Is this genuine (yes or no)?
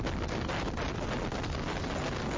yes